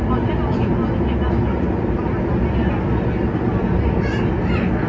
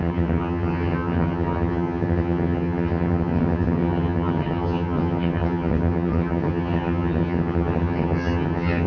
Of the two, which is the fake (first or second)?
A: second